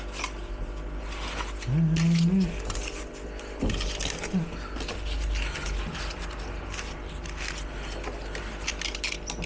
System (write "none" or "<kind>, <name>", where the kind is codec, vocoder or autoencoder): none